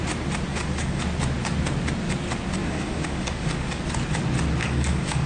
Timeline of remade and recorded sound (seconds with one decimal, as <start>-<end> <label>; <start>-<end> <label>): 0.0-0.5 recorded; 0.5-1.0 remade; 1.0-2.6 recorded; 2.6-3.8 remade; 3.8-4.6 recorded; 4.6-5.3 remade

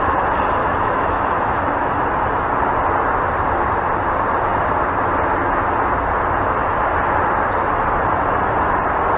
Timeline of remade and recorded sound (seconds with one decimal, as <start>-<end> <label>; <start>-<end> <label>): 0.0-0.6 recorded; 0.6-2.1 remade; 2.1-9.2 recorded

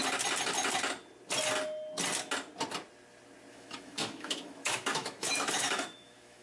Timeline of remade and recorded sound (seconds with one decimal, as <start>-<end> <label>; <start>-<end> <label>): 0.0-3.5 recorded; 3.5-6.4 remade

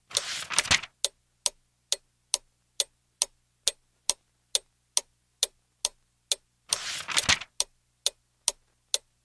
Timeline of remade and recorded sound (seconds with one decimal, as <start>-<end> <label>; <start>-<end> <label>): 0.0-9.2 recorded